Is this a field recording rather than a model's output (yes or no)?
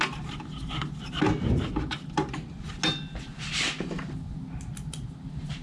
yes